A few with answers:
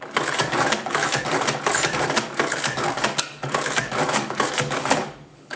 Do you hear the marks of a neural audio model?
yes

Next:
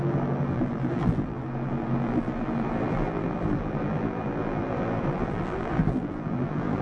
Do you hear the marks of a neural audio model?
yes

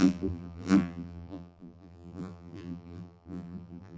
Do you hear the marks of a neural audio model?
yes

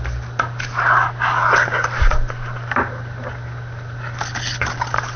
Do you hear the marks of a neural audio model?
no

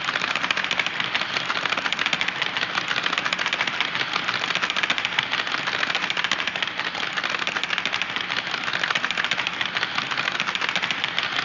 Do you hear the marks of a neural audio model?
no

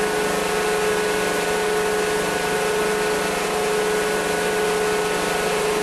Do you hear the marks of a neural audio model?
no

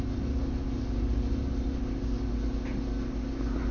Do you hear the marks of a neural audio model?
no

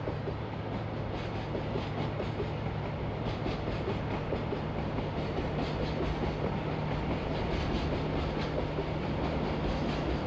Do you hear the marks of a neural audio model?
no